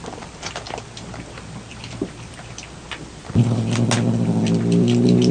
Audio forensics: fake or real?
real